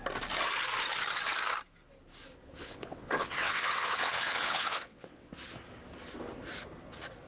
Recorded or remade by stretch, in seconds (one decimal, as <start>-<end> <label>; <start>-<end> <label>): 0.0-2.6 recorded; 2.6-5.3 remade; 5.3-7.3 recorded